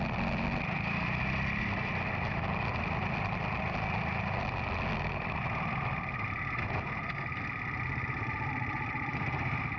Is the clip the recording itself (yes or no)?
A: yes